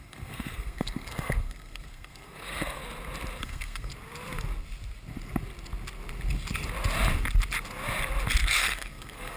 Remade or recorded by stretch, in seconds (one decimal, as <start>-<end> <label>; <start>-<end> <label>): 0.0-2.8 remade; 2.8-3.4 recorded; 3.4-3.9 remade; 3.9-8.4 recorded; 8.4-9.4 remade